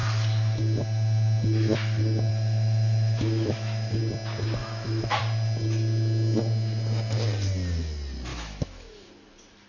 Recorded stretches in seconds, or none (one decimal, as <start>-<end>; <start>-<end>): 0.0-2.3; 4.0-4.6; 5.2-8.3; 9.1-9.7